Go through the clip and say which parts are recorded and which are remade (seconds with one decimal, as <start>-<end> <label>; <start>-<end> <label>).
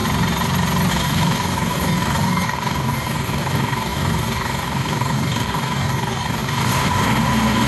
0.0-0.9 recorded; 0.9-7.7 remade